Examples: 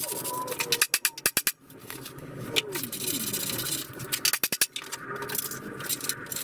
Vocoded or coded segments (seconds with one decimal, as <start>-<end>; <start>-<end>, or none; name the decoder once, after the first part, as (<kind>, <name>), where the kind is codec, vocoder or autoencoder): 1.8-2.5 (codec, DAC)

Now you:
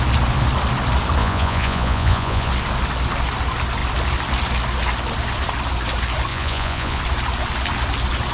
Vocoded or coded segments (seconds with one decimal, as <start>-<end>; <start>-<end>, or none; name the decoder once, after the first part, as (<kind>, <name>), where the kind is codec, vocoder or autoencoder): 1.2-2.5 (vocoder, Vocos); 6.3-7.0

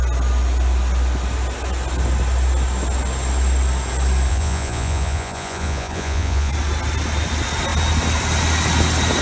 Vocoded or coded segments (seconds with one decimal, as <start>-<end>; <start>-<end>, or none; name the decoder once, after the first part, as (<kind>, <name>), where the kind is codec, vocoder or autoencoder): 4.3-6.5 (vocoder, Vocos)

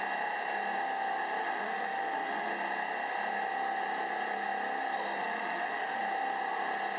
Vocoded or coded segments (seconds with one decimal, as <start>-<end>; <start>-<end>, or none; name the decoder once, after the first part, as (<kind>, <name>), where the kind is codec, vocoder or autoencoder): 1.4-2.5 (autoencoder, DAC-VAE); 5.2-6.0